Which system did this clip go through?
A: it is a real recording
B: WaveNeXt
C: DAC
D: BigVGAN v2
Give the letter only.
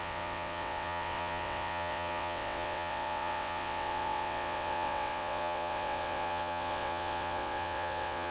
B